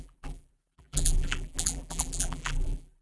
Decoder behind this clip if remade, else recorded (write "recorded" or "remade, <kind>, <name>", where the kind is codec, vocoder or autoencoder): remade, vocoder, BigVGAN v2